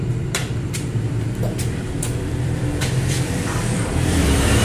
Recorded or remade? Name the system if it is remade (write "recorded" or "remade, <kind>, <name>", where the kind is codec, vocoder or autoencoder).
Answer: remade, vocoder, BigVGAN v2